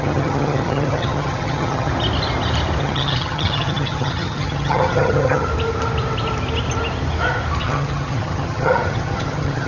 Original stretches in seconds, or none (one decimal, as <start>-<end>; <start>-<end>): 1.9-2.8; 5.5-7.6